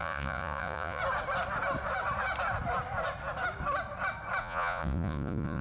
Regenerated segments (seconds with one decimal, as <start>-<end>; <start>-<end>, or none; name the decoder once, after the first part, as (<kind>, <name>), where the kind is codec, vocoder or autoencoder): 0.0-1.0 (vocoder, Vocos); 4.4-5.6